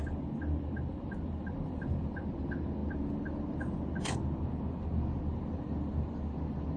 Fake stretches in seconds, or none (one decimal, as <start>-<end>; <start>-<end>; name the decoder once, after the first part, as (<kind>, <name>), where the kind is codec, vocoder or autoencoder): none